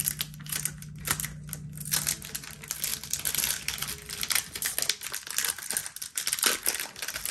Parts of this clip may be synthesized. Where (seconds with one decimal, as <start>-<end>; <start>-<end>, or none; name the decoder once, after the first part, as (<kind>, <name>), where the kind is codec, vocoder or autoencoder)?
none